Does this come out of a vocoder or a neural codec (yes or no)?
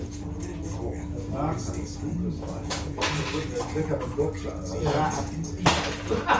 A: no